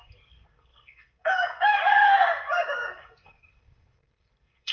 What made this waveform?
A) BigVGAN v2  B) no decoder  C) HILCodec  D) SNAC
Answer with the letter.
D